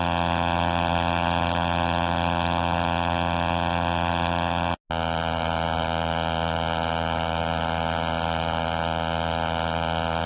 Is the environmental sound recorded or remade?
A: recorded